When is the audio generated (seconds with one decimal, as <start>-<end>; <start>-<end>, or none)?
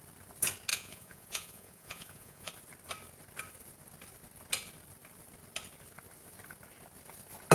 0.7-2.5